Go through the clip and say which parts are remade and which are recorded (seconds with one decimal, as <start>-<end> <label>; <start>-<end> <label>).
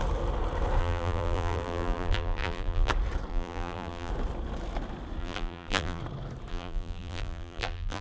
0.0-0.8 recorded; 0.8-2.9 remade; 2.9-3.3 recorded; 3.3-4.1 remade; 4.1-5.2 recorded; 5.2-6.0 remade; 6.0-6.5 recorded; 6.5-8.0 remade